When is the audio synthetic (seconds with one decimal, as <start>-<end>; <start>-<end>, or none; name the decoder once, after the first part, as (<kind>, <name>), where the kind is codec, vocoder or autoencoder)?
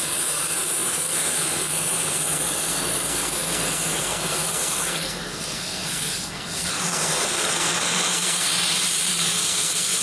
0.0-8.5 (codec, SNAC); 9.1-10.0